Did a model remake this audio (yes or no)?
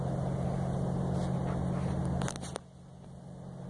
no